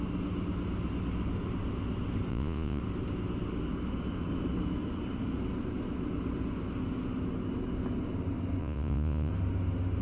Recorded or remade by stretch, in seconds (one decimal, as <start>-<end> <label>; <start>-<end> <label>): 0.0-2.3 recorded; 2.3-2.8 remade; 2.8-8.6 recorded; 8.6-9.3 remade; 9.3-10.0 recorded